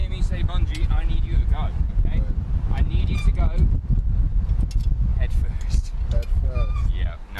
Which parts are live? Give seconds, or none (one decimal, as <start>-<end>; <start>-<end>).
0.0-7.4